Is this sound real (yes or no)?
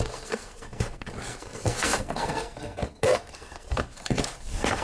no